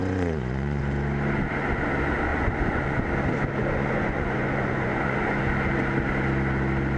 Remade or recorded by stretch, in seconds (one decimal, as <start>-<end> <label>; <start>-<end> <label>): 0.0-0.8 remade; 0.8-2.3 recorded; 2.3-3.1 remade; 3.1-3.6 recorded; 3.6-5.4 remade; 5.4-7.0 recorded